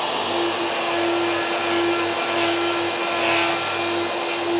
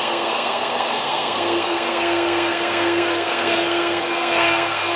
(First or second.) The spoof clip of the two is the second